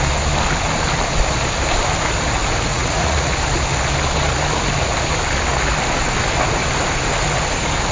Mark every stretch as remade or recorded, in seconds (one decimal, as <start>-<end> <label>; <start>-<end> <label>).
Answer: 0.0-2.7 recorded; 2.7-3.3 remade; 3.3-7.9 recorded